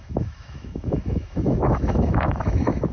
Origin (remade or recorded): remade